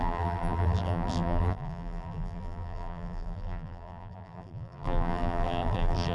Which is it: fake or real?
fake